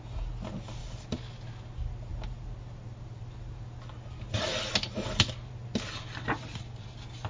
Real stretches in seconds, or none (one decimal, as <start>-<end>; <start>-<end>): 0.0-7.3